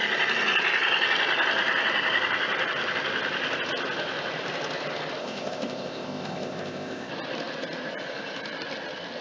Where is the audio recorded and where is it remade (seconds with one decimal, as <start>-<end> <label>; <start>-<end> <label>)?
0.0-5.2 recorded; 5.2-7.1 remade; 7.1-9.2 recorded